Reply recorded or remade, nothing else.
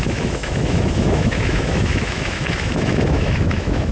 remade